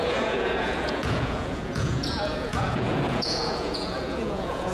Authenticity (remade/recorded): remade